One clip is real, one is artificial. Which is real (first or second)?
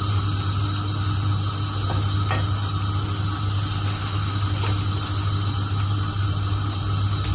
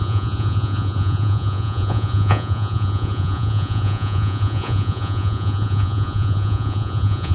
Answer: first